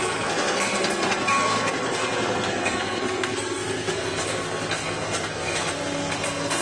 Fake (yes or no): yes